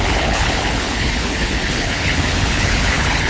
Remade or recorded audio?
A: remade